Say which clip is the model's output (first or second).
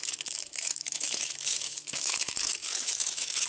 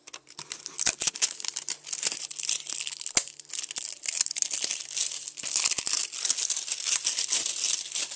first